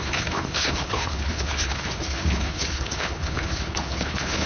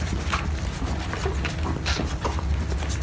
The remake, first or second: first